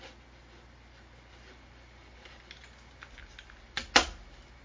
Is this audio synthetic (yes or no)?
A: no